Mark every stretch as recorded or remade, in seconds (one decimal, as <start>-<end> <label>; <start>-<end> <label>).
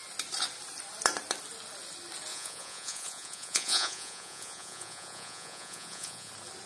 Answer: 0.0-2.3 recorded; 2.3-6.3 remade; 6.3-6.7 recorded